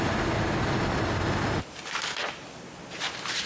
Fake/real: real